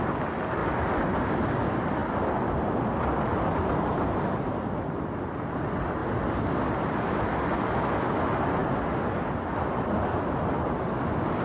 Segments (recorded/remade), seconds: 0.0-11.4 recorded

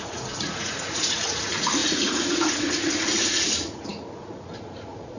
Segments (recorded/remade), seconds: 0.0-5.2 remade

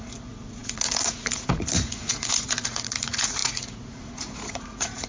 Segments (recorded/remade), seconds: 0.0-5.1 remade

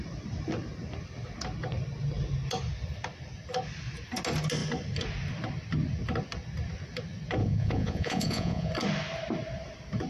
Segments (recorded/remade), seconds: 0.0-7.4 recorded; 7.4-8.7 remade; 8.7-10.1 recorded

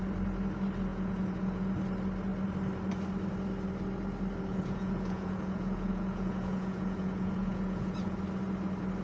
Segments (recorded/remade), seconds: 0.0-0.9 recorded; 0.9-1.7 remade; 1.7-4.5 recorded; 4.5-8.2 remade; 8.2-9.0 recorded

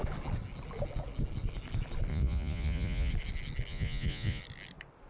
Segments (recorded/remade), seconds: 0.0-2.1 recorded; 2.1-3.1 remade; 3.1-3.7 recorded; 3.7-4.4 remade; 4.4-5.1 recorded

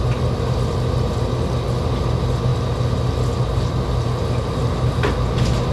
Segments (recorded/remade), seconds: 0.0-5.7 recorded